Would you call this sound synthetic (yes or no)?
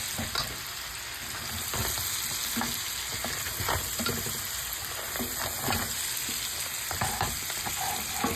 no